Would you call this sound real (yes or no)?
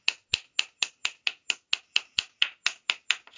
yes